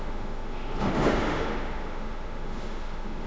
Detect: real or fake fake